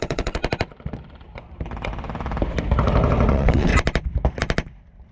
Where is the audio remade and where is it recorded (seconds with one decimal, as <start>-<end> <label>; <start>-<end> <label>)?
0.0-0.4 remade; 0.4-3.3 recorded; 3.3-3.7 remade; 3.7-5.1 recorded